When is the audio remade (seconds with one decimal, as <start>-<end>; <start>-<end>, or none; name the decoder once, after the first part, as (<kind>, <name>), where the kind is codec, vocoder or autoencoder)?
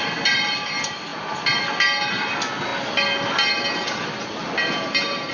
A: none